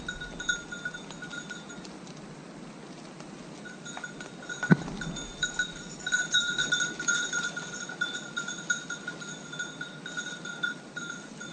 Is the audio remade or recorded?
recorded